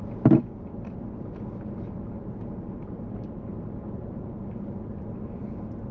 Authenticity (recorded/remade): recorded